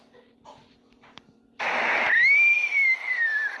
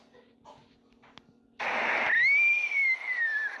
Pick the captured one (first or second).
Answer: second